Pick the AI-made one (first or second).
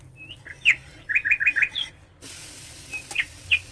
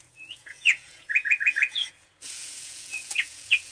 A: second